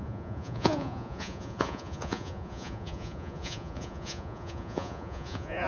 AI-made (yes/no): yes